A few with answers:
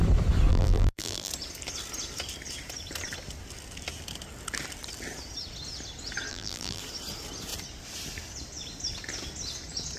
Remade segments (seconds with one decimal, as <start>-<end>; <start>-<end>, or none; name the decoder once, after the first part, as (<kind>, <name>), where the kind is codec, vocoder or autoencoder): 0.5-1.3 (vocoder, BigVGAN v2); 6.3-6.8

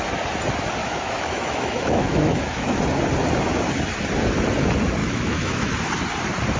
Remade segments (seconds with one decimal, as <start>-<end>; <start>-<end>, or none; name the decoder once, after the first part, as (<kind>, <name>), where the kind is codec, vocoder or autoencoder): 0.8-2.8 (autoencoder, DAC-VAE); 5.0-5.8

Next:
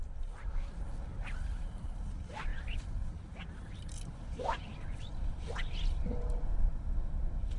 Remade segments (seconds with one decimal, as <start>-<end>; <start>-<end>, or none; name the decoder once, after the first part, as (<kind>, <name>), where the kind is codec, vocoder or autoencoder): none

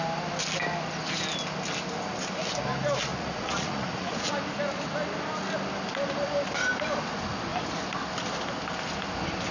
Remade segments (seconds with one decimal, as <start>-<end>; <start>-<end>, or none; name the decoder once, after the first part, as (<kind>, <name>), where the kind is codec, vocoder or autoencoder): 3.1-4.3 (vocoder, Vocos)

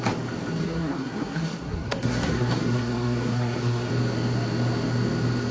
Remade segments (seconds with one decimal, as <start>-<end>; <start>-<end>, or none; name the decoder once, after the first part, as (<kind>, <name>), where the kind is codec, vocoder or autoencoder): 0.6-3.9 (codec, SNAC)